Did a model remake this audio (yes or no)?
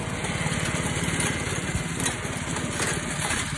no